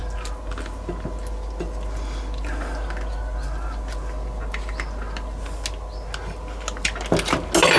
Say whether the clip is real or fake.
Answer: real